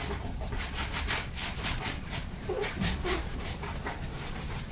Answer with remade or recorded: remade